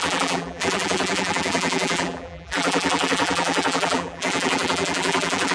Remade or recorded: remade